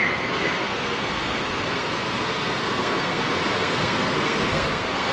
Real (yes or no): no